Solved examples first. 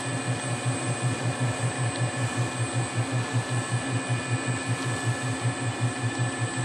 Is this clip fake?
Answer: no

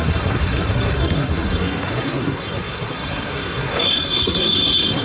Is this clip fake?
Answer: yes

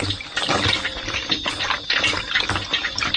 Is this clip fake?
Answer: no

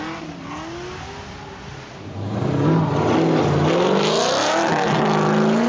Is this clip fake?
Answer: no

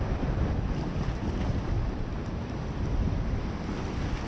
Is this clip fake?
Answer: no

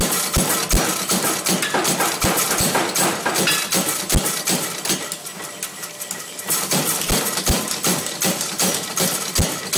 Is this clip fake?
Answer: no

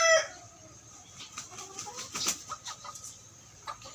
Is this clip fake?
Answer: no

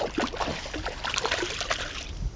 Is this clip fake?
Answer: no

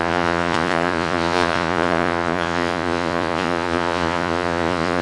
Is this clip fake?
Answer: yes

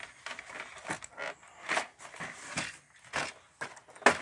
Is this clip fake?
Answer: no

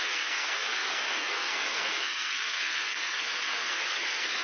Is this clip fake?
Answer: yes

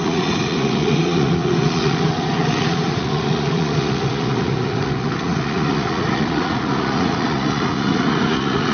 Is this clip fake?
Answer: yes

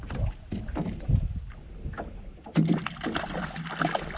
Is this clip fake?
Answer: no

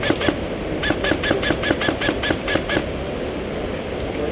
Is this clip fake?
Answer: no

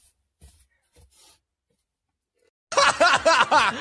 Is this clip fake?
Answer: no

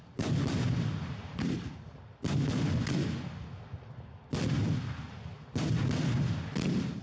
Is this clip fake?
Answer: no